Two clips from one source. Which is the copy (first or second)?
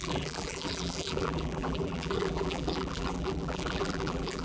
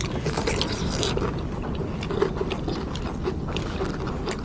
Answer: first